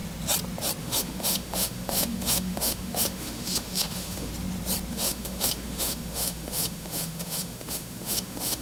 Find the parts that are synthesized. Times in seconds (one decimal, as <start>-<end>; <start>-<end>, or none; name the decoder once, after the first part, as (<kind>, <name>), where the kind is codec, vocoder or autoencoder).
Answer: 0.8-4.3 (autoencoder, DAC-VAE); 4.9-8.6